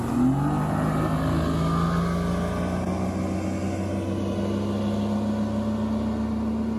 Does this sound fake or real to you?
real